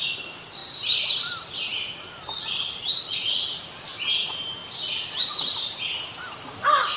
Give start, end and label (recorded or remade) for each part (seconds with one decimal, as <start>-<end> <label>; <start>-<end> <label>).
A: 0.0-4.6 remade; 4.6-6.2 recorded; 6.2-7.0 remade